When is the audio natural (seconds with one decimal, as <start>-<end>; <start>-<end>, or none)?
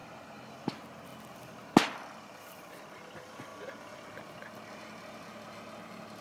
0.0-6.2